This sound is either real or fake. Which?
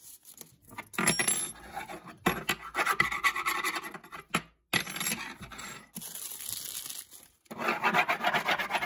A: real